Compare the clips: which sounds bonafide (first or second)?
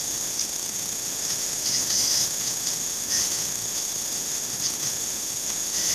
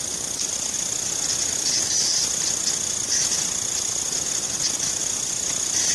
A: second